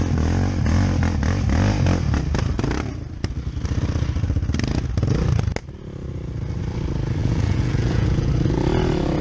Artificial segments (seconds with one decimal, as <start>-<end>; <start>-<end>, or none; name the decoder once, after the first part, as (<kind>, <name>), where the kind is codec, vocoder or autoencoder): 7.2-8.3 (vocoder, Vocos)